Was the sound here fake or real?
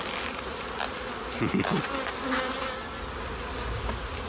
real